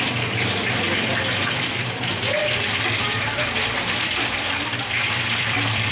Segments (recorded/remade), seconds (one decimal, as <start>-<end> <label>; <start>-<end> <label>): 0.0-2.4 recorded; 2.4-5.9 remade